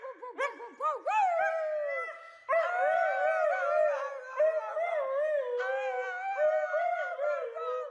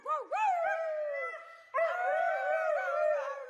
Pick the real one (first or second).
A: first